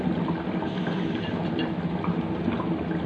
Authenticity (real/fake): real